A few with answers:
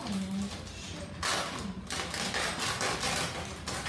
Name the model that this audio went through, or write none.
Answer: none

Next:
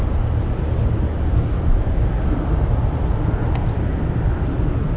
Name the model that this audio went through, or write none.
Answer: none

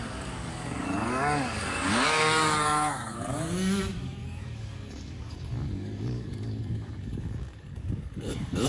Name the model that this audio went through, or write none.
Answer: codec, DAC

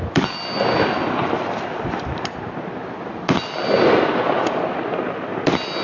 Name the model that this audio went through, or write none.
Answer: none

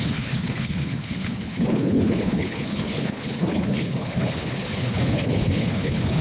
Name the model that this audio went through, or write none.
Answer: codec, HILCodec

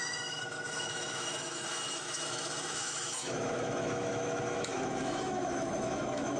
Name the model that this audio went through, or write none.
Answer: autoencoder, DAC-VAE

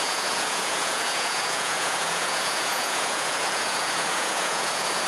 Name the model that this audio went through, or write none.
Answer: vocoder, Vocos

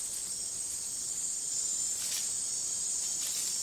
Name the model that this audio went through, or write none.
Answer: vocoder, BigVGAN v2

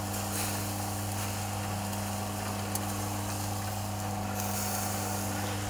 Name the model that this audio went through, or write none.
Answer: none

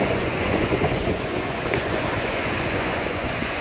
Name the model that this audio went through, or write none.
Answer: vocoder, Vocos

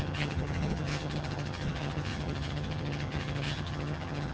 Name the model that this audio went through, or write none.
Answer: vocoder, HiFi-GAN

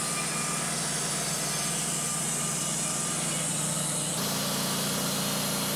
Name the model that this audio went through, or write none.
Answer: none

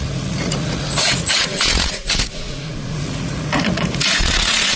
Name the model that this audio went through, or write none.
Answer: vocoder, Vocos